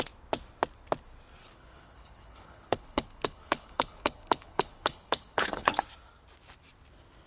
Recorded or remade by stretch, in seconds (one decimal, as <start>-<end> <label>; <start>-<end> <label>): 0.0-1.4 recorded; 1.4-5.8 remade; 5.8-7.3 recorded